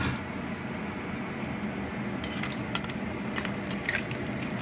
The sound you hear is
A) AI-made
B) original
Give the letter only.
B